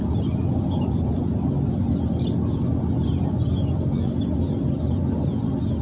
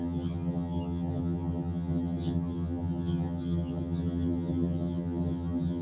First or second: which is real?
first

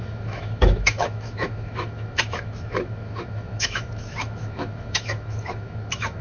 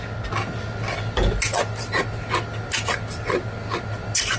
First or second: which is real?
second